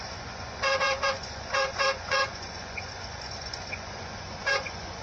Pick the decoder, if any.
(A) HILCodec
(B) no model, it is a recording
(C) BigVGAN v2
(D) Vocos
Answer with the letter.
D